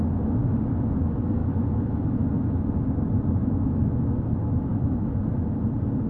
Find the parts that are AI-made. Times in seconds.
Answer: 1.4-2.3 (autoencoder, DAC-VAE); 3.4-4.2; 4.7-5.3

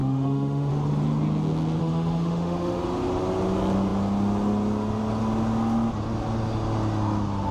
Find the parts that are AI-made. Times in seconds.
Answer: 0.0-0.7 (autoencoder, DAC-VAE); 1.8-2.8

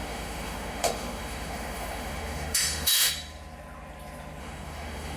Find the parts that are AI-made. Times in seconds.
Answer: 0.0-3.1 (autoencoder, DAC-VAE); 4.4-5.2